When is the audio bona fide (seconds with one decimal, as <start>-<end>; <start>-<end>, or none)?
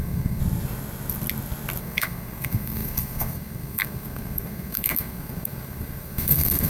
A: 0.4-1.8